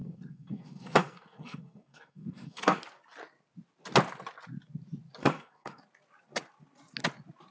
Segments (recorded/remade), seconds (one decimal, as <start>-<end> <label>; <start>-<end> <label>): 0.0-2.8 remade; 2.8-5.2 recorded; 5.2-5.8 remade; 5.8-7.5 recorded